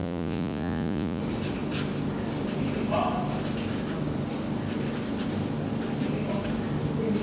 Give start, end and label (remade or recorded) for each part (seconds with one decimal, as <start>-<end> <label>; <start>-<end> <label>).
0.0-1.2 remade; 1.2-7.2 recorded